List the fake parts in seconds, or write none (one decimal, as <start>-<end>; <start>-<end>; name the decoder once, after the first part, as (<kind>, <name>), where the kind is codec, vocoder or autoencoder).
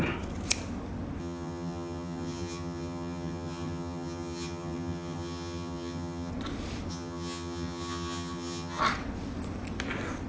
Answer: 1.2-6.3 (vocoder, HiFi-GAN); 6.9-8.8